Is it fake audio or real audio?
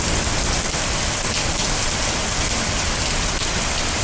real